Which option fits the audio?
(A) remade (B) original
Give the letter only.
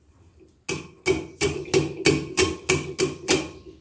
B